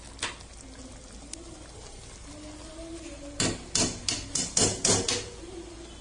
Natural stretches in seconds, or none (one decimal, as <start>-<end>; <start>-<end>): 0.0-6.0